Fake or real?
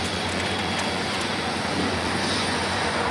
fake